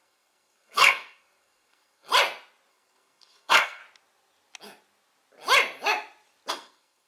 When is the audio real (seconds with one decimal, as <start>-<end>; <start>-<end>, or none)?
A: 2.1-2.7; 3.8-6.5